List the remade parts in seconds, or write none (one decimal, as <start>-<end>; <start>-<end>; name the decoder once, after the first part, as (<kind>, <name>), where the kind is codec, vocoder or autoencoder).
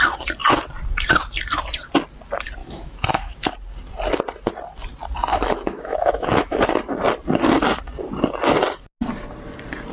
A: 2.6-3.5 (autoencoder, DAC-VAE); 5.3-6.6